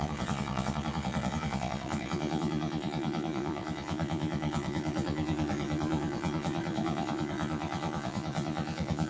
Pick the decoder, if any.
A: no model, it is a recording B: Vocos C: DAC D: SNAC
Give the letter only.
B